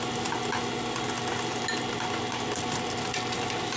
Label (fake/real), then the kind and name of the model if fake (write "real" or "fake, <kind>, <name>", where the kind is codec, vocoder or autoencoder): real